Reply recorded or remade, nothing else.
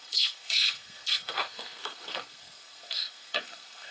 remade